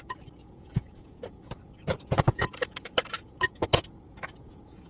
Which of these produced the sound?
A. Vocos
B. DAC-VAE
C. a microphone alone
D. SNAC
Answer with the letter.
A